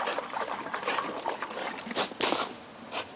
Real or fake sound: real